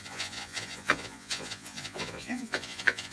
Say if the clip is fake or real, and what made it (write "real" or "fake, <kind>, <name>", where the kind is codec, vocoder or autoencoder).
fake, vocoder, Vocos